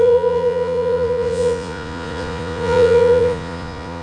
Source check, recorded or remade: remade